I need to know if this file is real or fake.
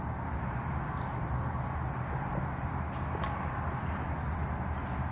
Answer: real